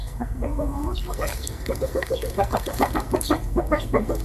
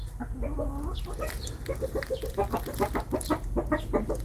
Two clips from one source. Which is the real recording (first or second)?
second